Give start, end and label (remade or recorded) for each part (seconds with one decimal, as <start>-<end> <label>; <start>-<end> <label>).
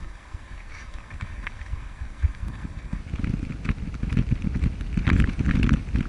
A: 0.0-3.0 remade; 3.0-6.1 recorded